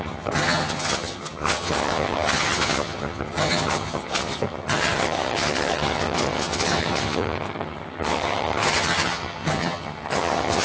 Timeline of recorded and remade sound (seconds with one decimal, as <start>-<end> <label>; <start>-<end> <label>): 0.0-10.6 remade

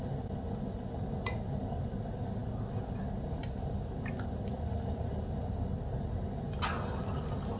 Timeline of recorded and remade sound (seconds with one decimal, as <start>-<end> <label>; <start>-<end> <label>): 0.0-7.6 recorded